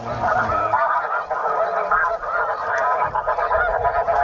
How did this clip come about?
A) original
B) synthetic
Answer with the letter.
A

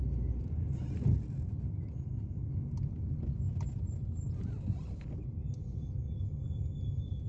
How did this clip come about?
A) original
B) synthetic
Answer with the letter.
A